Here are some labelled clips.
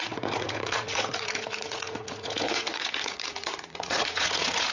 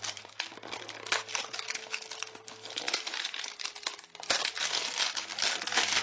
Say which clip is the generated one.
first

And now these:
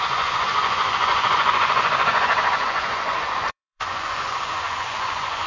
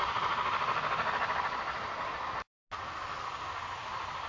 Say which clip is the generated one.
first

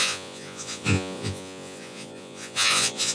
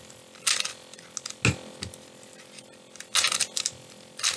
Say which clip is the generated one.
first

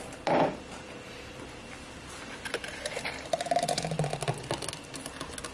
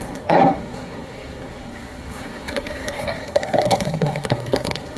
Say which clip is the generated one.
second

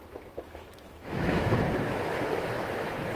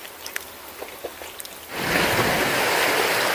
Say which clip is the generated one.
first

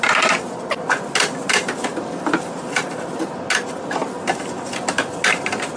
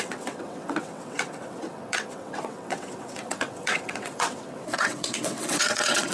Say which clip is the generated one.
second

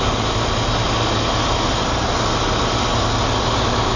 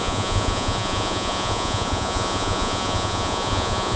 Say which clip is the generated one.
second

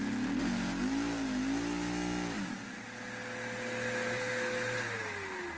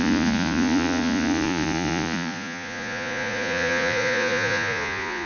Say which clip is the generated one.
second